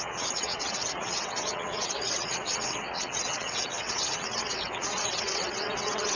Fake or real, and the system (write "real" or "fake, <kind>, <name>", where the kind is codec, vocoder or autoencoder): fake, vocoder, WaveNeXt